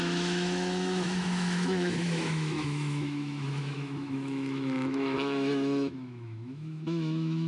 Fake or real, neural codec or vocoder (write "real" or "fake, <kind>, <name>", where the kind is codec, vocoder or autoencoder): fake, autoencoder, DAC-VAE